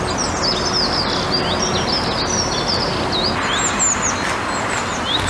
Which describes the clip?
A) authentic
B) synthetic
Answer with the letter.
A